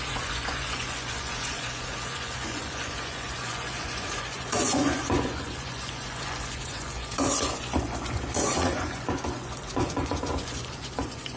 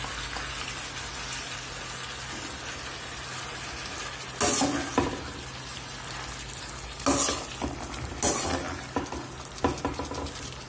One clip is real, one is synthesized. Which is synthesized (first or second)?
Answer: first